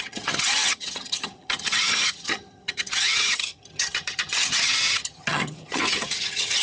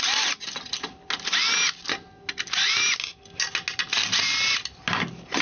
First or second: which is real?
second